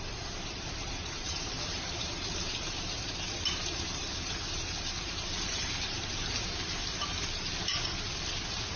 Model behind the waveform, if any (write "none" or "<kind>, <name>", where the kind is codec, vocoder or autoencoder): vocoder, BigVGAN v2